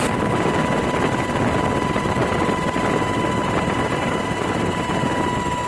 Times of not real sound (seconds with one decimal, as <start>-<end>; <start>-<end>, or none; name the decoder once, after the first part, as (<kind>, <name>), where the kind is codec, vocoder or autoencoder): 3.4-5.1 (vocoder, BigVGAN v2)